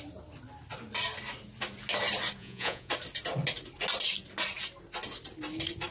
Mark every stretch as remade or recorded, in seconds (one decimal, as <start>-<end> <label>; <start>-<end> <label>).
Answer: 0.0-2.4 recorded; 2.4-2.9 remade; 2.9-5.9 recorded